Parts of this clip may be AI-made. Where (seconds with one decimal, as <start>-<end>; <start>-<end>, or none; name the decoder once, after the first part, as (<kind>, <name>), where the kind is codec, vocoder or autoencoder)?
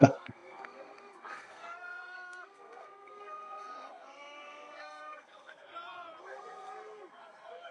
0.0-5.7 (codec, SNAC); 6.2-7.7